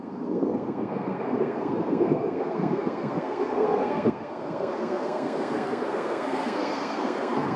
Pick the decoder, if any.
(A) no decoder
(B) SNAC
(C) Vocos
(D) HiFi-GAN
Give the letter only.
B